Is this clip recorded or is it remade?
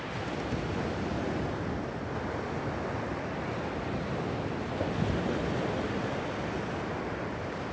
recorded